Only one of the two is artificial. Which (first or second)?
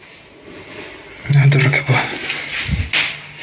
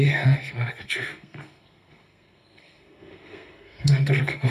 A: second